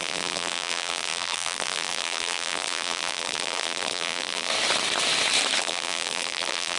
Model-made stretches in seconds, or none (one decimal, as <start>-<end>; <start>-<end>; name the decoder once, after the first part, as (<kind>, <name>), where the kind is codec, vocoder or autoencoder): 0.0-4.5 (vocoder, BigVGAN v2); 5.6-6.8